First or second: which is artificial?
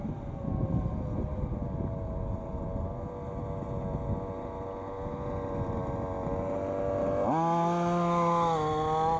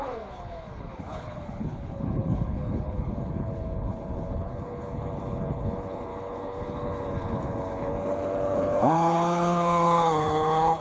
second